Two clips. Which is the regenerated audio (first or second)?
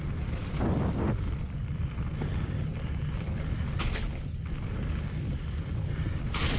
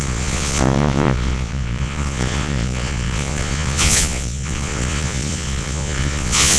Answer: second